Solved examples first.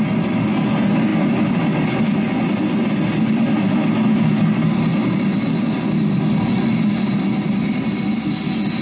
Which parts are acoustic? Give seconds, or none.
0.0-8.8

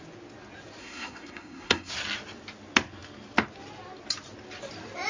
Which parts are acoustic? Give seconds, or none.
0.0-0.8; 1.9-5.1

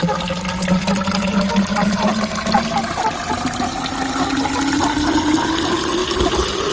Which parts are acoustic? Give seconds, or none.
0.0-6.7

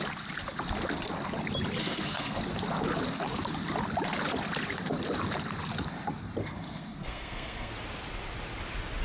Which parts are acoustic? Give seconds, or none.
0.0-1.8; 2.4-6.4; 7.7-9.0

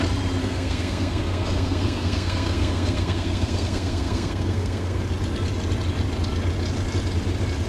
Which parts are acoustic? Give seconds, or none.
0.0-0.4; 5.0-7.7

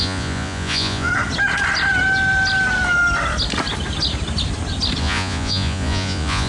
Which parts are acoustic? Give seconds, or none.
1.1-5.0